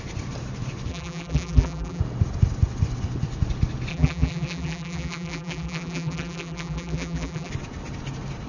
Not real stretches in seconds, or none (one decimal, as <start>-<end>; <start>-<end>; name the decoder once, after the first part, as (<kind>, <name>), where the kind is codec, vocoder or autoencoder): 0.9-2.0 (vocoder, BigVGAN v2); 3.9-7.5